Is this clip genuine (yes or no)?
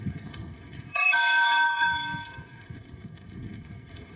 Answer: no